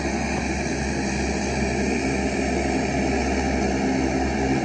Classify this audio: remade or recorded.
recorded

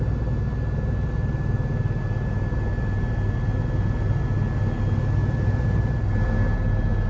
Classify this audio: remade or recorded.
recorded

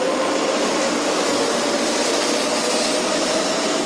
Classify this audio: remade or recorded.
recorded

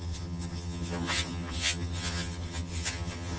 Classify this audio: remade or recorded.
remade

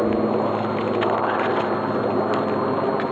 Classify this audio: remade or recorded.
recorded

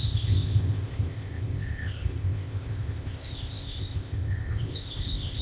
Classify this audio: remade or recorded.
remade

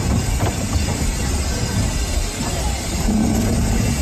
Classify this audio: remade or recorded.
recorded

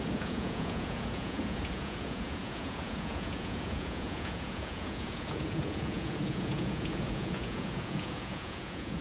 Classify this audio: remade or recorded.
remade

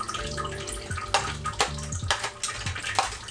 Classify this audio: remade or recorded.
recorded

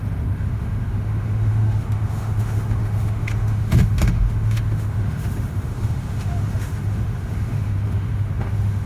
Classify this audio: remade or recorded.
remade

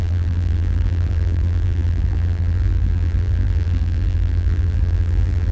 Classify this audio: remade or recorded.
remade